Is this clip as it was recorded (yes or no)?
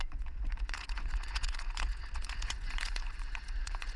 no